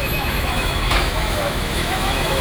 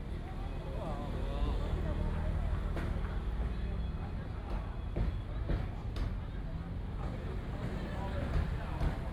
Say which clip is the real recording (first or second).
second